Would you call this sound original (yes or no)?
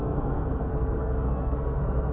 no